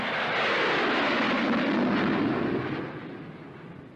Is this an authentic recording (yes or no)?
yes